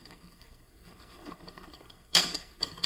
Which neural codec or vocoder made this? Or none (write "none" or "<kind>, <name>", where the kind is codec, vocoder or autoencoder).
codec, SNAC